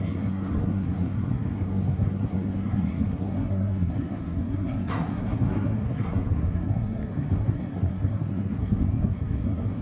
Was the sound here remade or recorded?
remade